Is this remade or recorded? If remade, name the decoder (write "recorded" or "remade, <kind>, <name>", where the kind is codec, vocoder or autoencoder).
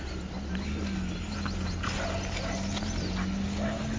recorded